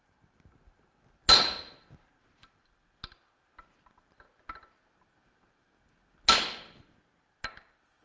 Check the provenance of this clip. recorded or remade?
recorded